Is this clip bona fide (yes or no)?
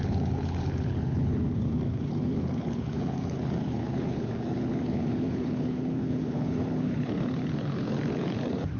no